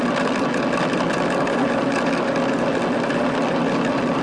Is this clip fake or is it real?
real